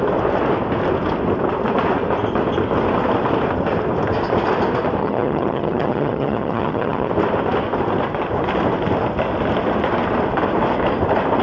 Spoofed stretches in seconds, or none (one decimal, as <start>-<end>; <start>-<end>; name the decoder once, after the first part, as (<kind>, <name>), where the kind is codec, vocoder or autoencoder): 5.0-7.1 (vocoder, HiFi-GAN)